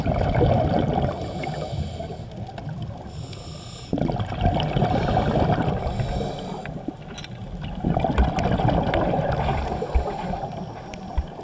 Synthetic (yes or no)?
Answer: no